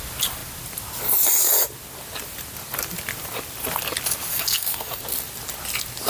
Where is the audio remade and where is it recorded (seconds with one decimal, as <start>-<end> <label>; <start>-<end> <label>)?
0.0-4.3 recorded; 4.3-5.0 remade; 5.0-6.1 recorded